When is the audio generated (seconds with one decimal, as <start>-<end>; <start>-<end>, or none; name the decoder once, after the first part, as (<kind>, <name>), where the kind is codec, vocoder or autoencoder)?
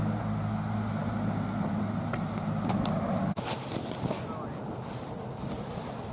none